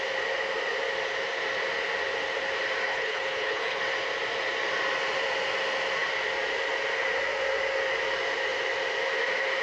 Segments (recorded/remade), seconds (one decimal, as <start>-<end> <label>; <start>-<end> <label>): 0.0-2.9 recorded; 2.9-3.8 remade; 3.8-9.6 recorded